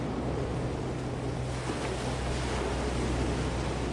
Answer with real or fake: real